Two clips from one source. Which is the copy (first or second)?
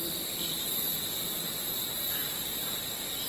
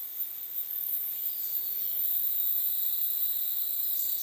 first